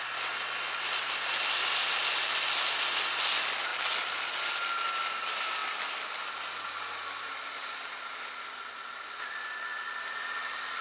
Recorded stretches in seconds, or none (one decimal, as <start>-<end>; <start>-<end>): 0.0-10.8